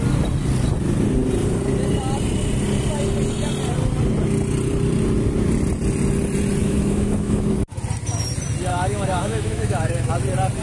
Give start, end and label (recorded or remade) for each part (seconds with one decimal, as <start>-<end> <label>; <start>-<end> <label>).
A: 0.0-6.6 recorded; 6.6-7.6 remade; 7.6-8.7 recorded; 8.7-10.1 remade; 10.1-10.6 recorded